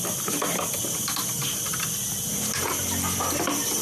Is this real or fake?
real